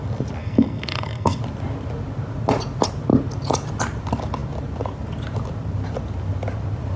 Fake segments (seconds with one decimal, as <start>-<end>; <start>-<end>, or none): 0.4-1.4

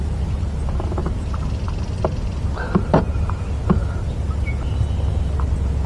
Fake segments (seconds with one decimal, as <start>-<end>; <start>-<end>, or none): none

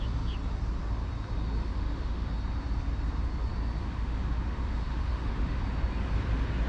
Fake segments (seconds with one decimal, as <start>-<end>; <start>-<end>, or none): 1.6-2.3; 3.8-5.6

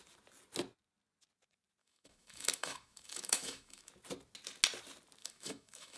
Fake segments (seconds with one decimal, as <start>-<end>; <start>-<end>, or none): 1.8-3.9; 5.2-6.0

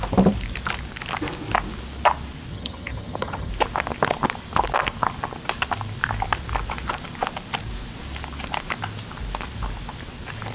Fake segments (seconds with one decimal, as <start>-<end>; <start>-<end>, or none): 2.5-3.5

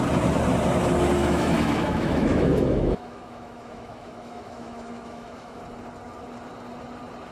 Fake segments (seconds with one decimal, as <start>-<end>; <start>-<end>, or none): 1.2-5.6